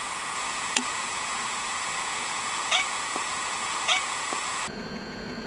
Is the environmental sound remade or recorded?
remade